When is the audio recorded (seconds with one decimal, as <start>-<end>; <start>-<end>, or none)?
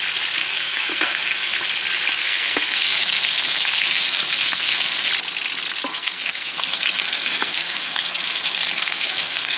0.0-0.4; 1.6-2.2; 5.1-5.9